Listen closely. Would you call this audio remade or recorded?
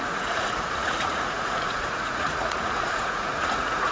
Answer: remade